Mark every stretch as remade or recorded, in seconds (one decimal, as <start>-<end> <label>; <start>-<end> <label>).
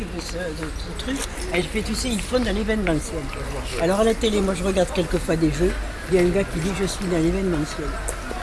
0.0-8.4 recorded